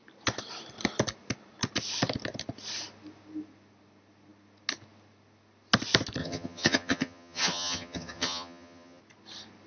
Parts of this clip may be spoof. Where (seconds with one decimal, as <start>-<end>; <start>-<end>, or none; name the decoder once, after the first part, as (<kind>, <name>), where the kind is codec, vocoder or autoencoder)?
6.2-9.0 (vocoder, HiFi-GAN)